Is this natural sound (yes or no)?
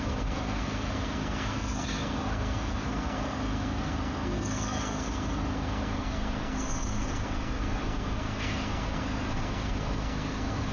no